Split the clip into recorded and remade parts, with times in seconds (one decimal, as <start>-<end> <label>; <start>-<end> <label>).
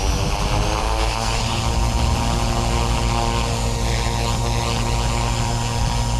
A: 0.0-0.8 recorded; 0.8-1.4 remade; 1.4-6.2 recorded